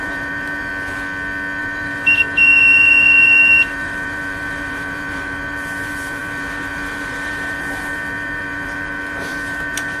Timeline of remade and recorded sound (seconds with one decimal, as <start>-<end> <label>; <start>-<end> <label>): 0.0-0.7 remade; 0.7-1.6 recorded; 1.6-10.0 remade